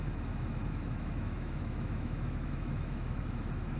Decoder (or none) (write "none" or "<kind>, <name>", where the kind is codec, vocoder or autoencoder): autoencoder, DAC-VAE